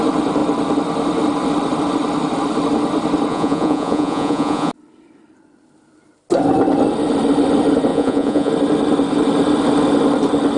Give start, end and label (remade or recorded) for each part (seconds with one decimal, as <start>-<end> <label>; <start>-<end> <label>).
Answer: 0.0-3.3 recorded; 3.3-4.7 remade; 4.7-7.9 recorded; 7.9-8.5 remade; 8.5-10.6 recorded